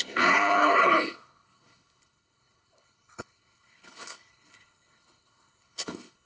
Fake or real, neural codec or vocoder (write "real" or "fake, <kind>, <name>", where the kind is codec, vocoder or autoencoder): fake, codec, HILCodec